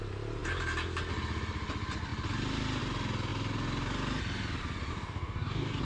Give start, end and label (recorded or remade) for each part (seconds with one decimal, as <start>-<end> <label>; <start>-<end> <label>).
0.0-4.9 recorded; 4.9-5.8 remade